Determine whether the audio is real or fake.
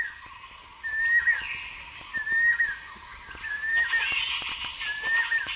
real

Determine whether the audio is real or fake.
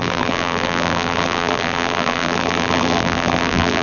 fake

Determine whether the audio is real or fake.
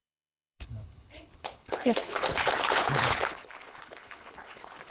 fake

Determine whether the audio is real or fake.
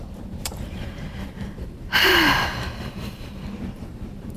fake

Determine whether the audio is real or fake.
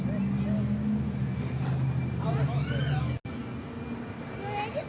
real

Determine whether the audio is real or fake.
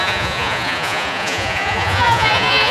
fake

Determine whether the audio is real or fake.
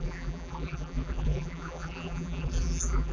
fake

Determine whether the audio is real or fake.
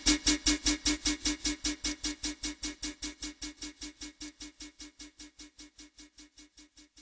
real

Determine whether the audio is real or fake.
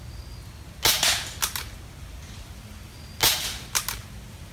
real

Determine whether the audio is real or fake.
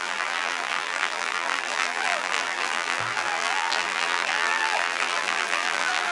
fake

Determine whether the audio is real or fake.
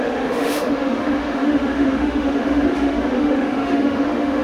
fake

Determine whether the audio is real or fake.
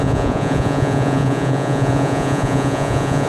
fake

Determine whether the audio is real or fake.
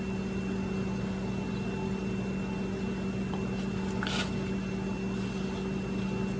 real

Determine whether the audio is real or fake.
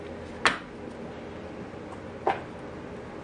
real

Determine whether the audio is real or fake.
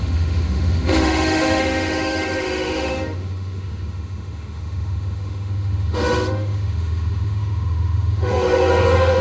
fake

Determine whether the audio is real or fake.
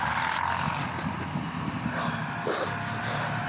fake